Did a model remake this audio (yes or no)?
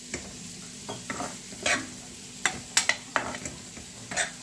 no